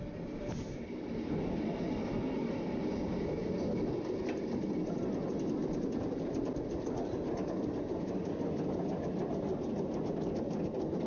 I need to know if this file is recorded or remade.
recorded